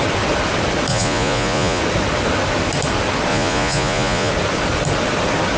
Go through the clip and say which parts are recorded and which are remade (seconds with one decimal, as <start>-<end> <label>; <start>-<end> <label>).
0.0-0.9 recorded; 0.9-1.8 remade; 1.8-3.3 recorded; 3.3-4.3 remade; 4.3-5.6 recorded